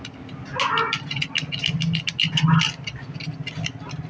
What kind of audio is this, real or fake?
real